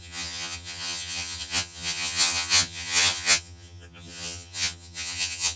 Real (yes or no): no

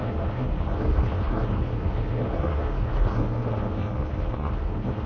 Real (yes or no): no